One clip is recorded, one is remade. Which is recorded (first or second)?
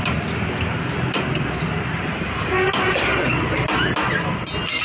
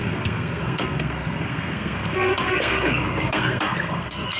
first